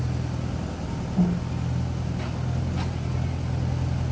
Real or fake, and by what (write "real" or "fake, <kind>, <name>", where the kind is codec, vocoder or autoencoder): real